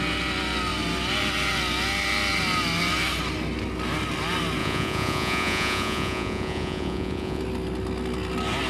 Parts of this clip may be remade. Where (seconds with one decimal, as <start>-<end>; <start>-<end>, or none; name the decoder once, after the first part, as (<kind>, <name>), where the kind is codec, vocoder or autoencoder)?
4.6-7.4 (vocoder, Vocos)